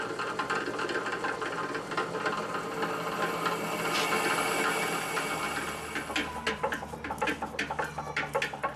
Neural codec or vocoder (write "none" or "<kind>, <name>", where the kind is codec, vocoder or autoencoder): none